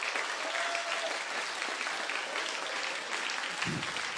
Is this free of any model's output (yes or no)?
yes